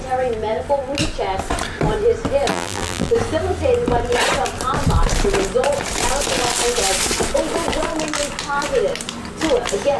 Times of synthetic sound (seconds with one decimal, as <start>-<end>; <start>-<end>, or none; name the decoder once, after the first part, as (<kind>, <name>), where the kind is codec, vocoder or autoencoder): 2.5-3.1 (vocoder, BigVGAN v2)